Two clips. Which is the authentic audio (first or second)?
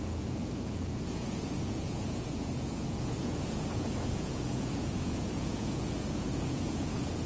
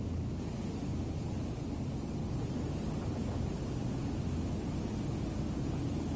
second